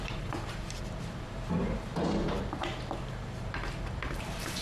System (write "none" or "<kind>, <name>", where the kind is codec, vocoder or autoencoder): vocoder, BigVGAN v2